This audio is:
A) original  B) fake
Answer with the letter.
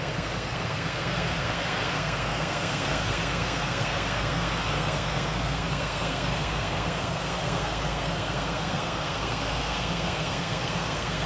B